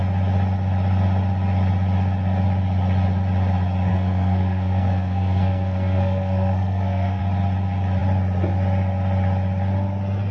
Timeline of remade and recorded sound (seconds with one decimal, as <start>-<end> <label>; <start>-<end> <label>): 0.0-3.9 recorded; 3.9-7.2 remade; 7.2-10.3 recorded

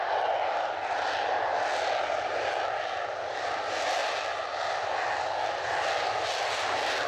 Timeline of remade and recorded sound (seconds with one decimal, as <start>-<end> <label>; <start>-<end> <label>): 0.0-7.1 recorded